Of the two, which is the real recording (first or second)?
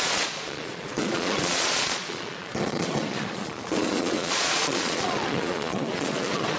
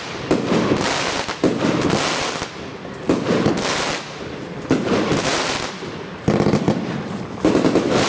second